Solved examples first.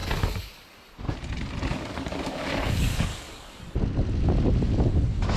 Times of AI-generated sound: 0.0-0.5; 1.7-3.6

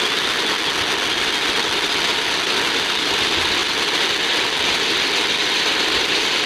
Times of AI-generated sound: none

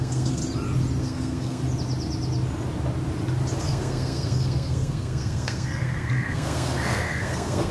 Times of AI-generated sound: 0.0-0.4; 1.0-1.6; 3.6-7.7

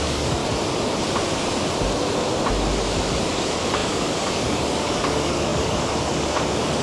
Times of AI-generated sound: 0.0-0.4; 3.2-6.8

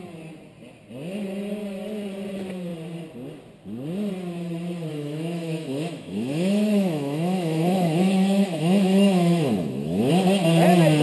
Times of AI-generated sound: 4.9-10.1